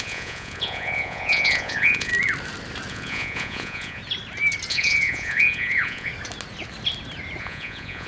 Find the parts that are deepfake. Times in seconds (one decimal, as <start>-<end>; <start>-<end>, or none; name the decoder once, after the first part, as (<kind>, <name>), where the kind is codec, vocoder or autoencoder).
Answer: 0.0-2.1 (vocoder, Vocos); 2.9-4.0; 4.7-6.1; 7.4-8.1